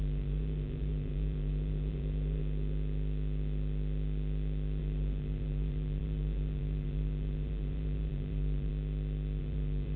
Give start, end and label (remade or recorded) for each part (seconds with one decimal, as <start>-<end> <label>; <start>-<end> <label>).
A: 0.0-2.4 remade; 2.4-4.8 recorded; 4.8-8.7 remade; 8.7-9.4 recorded; 9.4-10.0 remade